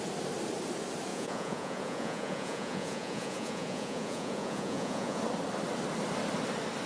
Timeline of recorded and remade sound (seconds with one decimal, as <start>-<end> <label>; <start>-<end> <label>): 0.0-1.1 recorded; 1.1-5.2 remade; 5.2-6.9 recorded